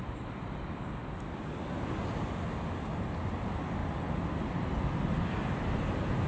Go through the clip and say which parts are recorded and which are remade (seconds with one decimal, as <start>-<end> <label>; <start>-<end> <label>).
0.0-6.3 recorded